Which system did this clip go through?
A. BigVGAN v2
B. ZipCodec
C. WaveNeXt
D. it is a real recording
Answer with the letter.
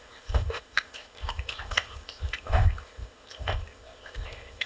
B